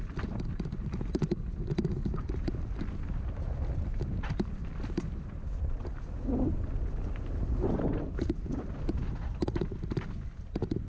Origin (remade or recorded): remade